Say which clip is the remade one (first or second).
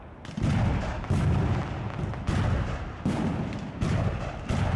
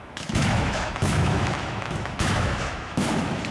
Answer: second